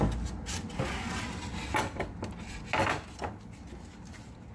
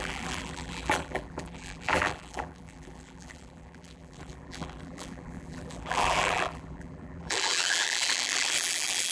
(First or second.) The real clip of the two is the first